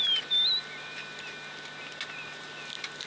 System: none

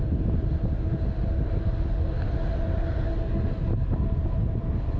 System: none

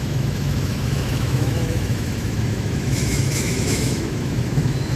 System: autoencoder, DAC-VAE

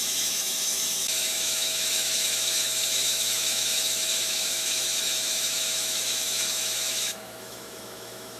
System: autoencoder, DAC-VAE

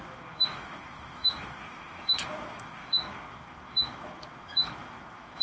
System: autoencoder, DAC-VAE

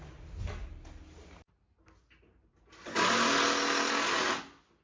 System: none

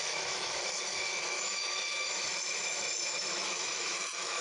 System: autoencoder, DAC-VAE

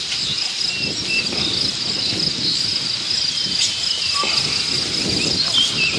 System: none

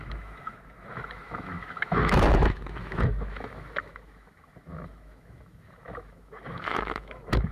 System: autoencoder, DAC-VAE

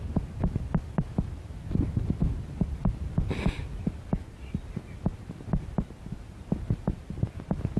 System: none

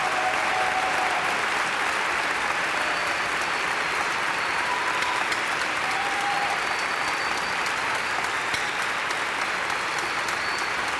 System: none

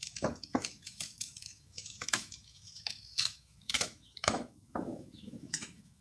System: autoencoder, DAC-VAE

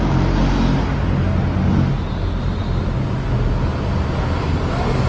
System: none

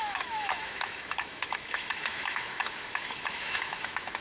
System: autoencoder, DAC-VAE